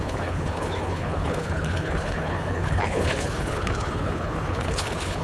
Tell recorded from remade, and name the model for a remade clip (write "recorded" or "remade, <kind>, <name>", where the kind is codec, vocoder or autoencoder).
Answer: remade, codec, HILCodec